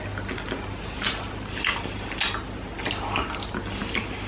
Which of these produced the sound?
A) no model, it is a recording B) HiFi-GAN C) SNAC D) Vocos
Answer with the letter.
A